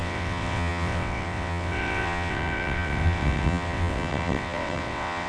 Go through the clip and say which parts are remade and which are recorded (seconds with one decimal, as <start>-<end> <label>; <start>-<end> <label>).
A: 0.0-5.3 remade